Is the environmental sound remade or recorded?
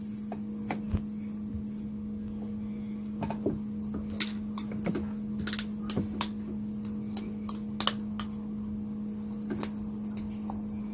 recorded